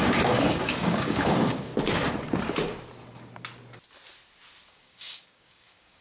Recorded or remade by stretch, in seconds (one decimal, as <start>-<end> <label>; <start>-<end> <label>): 0.0-1.7 remade; 1.7-4.7 recorded; 4.7-6.0 remade

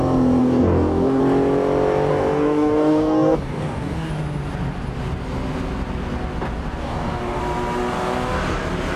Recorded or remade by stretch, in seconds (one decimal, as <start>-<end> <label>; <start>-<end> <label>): 0.0-0.4 recorded; 0.4-1.2 remade; 1.2-2.1 recorded; 2.1-4.1 remade; 4.1-6.8 recorded; 6.8-7.4 remade; 7.4-9.0 recorded

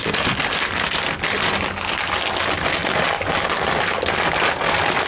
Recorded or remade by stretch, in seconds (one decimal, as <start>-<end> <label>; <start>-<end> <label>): 0.0-5.1 recorded

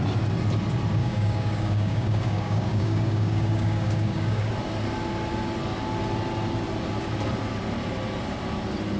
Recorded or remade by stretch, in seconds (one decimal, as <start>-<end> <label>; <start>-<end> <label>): 0.0-1.0 recorded; 1.0-4.5 remade; 4.5-9.0 recorded

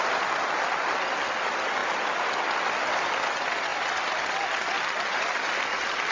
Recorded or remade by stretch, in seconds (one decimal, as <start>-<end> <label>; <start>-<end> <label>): 0.0-6.1 recorded

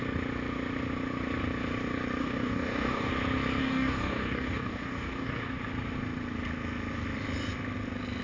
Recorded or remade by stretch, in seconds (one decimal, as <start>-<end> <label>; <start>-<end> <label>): 0.0-2.2 recorded; 2.2-3.1 remade; 3.1-3.6 recorded; 3.6-5.6 remade; 5.6-8.2 recorded

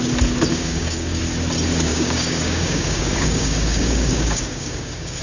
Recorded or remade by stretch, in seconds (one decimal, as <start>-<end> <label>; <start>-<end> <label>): 0.0-0.5 recorded; 0.5-1.2 remade; 1.2-1.9 recorded; 1.9-5.2 remade